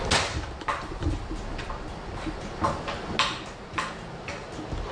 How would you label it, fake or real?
real